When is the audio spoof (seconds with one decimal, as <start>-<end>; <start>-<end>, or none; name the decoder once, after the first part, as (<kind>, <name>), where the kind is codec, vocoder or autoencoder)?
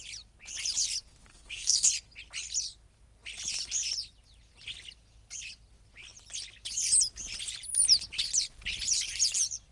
1.3-1.9 (codec, SNAC)